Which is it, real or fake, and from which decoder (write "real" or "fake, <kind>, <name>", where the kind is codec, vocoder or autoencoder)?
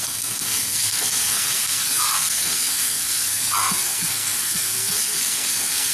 fake, codec, SNAC